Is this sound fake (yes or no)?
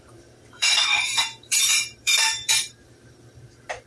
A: yes